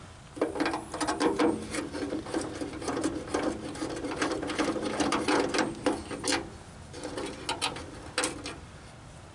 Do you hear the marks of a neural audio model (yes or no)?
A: no